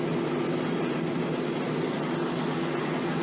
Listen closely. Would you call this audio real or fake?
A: real